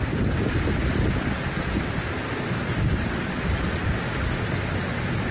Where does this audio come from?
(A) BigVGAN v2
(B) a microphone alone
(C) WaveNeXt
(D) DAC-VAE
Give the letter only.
B